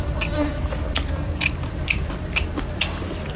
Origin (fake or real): fake